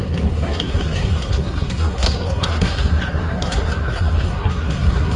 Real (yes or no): no